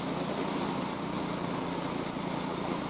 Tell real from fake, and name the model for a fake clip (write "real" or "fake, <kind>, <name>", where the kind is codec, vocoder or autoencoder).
real